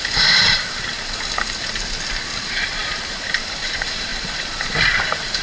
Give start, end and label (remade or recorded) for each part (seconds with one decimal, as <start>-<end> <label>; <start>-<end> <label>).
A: 0.0-0.9 remade; 0.9-2.4 recorded; 2.4-5.4 remade